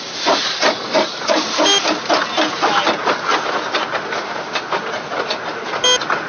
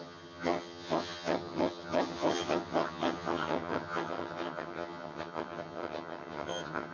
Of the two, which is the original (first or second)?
first